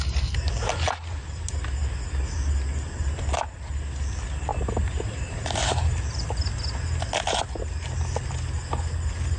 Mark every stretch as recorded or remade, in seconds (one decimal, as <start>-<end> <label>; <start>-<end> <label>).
0.0-9.4 recorded